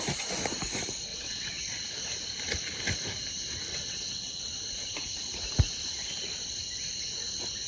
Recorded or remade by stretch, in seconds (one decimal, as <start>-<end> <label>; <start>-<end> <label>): 0.0-1.1 recorded; 1.1-1.6 remade; 1.6-3.7 recorded; 3.7-4.4 remade; 4.4-7.7 recorded